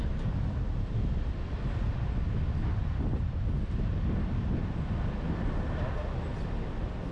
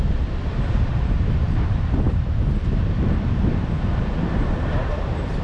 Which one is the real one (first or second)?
first